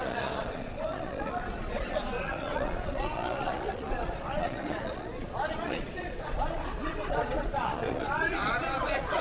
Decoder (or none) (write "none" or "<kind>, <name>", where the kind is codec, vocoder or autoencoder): vocoder, Vocos